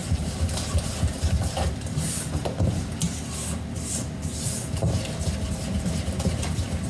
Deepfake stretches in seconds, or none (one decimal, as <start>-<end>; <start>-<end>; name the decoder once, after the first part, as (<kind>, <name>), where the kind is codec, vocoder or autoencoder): none